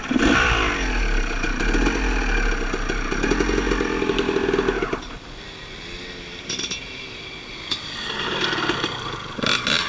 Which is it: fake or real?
real